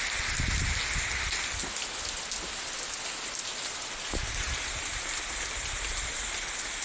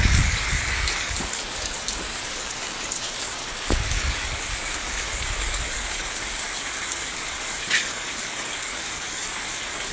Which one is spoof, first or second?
second